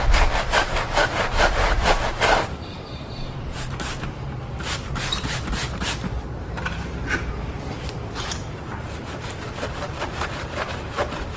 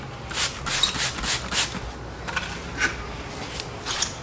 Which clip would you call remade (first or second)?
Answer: first